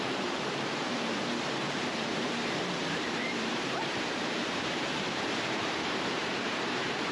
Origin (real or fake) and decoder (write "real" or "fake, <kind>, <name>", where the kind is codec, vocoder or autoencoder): fake, vocoder, BigVGAN v2